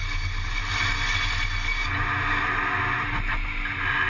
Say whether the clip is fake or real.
real